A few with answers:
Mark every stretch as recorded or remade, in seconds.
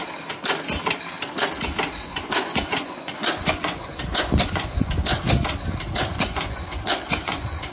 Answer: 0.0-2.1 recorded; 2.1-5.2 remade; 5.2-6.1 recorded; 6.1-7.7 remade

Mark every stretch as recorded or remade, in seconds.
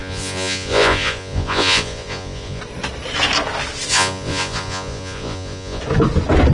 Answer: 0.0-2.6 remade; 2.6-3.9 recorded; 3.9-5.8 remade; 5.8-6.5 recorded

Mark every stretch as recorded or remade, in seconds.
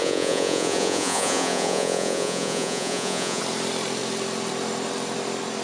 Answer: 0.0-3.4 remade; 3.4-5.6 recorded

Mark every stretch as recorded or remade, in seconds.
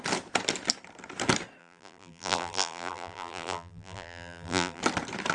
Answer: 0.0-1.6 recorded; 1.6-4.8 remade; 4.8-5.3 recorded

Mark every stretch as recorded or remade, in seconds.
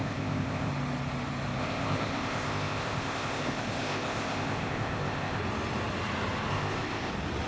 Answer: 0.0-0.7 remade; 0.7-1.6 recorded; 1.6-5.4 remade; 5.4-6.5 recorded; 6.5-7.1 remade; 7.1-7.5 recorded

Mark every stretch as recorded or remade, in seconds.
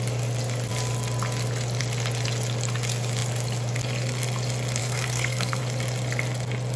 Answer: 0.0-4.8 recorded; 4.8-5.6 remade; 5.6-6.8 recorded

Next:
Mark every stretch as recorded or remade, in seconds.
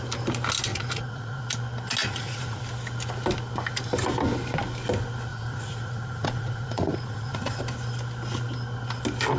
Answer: 0.0-0.7 recorded; 0.7-1.4 remade; 1.4-2.0 recorded; 2.0-2.6 remade; 2.6-5.3 recorded; 5.3-7.6 remade; 7.6-9.4 recorded